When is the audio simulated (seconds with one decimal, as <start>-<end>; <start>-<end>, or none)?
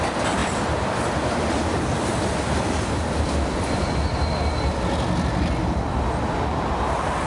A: 0.4-4.8